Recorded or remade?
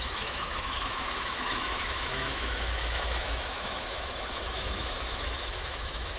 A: remade